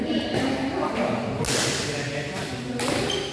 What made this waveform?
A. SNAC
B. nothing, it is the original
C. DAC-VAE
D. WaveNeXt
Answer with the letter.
B